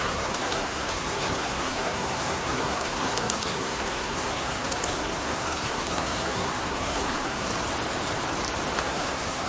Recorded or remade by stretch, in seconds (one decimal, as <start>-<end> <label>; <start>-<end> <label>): 0.0-7.5 remade; 7.5-8.8 recorded; 8.8-9.5 remade